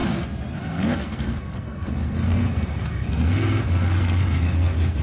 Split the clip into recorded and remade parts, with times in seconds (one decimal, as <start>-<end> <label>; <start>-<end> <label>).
0.0-0.6 recorded; 0.6-5.0 remade